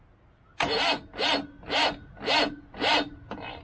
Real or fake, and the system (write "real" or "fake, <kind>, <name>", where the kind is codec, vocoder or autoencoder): real